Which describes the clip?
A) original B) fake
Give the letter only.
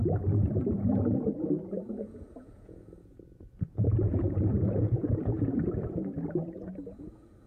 B